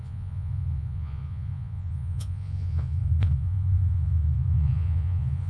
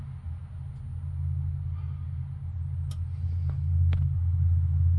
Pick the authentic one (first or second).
second